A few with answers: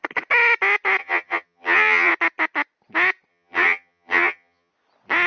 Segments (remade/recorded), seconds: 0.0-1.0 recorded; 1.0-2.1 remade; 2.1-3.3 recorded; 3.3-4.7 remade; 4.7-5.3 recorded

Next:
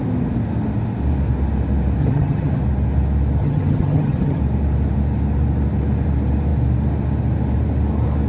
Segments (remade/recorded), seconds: 0.0-2.0 recorded; 2.0-2.6 remade; 2.6-3.4 recorded; 3.4-4.4 remade; 4.4-8.3 recorded

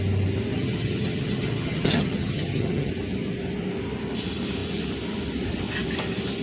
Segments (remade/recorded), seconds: 0.0-0.5 recorded; 0.5-2.9 remade; 2.9-6.4 recorded

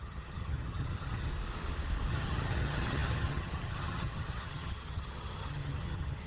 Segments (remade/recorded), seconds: 0.0-1.3 remade; 1.3-2.1 recorded; 2.1-6.3 remade

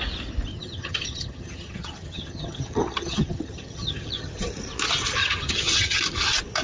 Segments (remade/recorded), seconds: 0.0-0.5 recorded; 0.5-4.5 remade; 4.5-5.2 recorded; 5.2-6.0 remade; 6.0-6.6 recorded

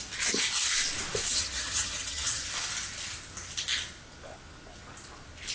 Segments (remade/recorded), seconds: 0.0-1.3 recorded; 1.3-2.4 remade; 2.4-5.5 recorded

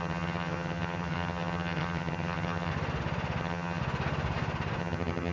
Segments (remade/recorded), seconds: 0.0-2.7 remade; 2.7-3.4 recorded; 3.4-3.8 remade; 3.8-4.8 recorded; 4.8-5.3 remade